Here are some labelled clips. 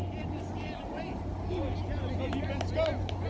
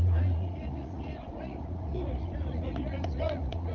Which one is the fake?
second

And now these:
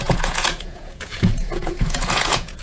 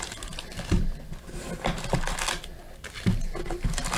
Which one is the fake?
first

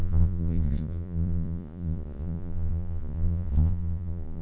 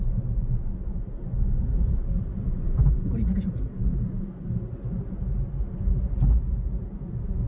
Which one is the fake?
first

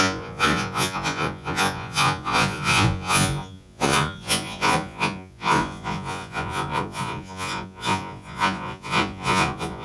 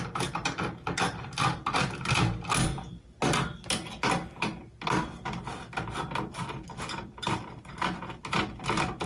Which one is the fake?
first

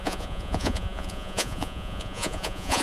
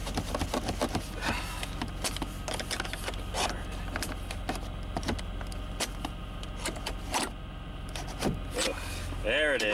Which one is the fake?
first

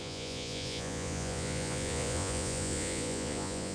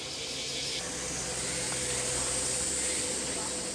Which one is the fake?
first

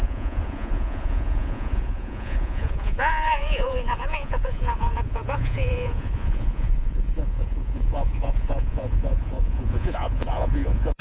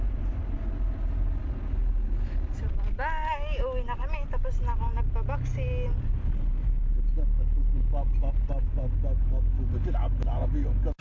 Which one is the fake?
first